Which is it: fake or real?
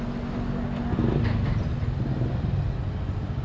real